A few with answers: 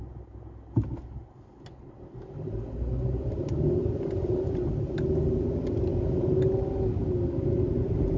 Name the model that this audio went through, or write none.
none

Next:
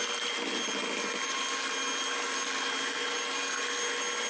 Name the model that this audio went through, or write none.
none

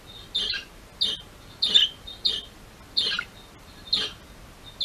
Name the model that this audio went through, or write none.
none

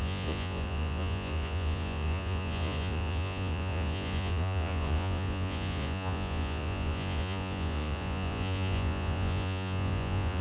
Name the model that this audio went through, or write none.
vocoder, Vocos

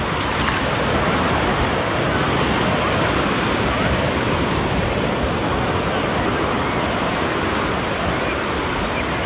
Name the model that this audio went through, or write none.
none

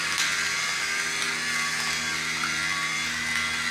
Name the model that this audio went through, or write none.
none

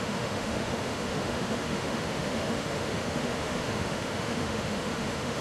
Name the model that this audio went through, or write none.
autoencoder, DAC-VAE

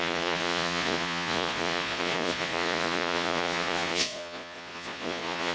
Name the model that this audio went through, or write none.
vocoder, Vocos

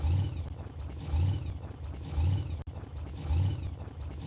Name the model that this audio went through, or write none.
none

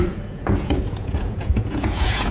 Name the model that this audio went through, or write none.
vocoder, Vocos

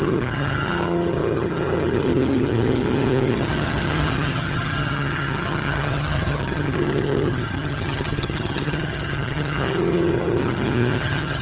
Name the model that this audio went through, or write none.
vocoder, HiFi-GAN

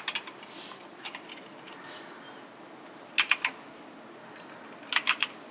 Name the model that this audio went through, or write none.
none